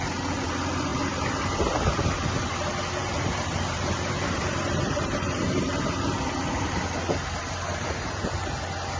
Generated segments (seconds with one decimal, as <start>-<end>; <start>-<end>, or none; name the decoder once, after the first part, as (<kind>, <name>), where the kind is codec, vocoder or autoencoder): 0.9-1.4 (vocoder, BigVGAN v2); 3.0-8.2